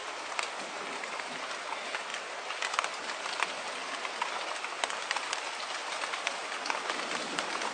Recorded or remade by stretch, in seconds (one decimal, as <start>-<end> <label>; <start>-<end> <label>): 0.0-7.7 recorded